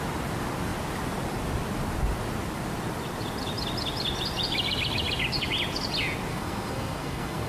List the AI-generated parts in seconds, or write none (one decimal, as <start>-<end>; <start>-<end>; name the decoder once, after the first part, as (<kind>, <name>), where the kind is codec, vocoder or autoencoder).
6.3-7.5 (codec, SNAC)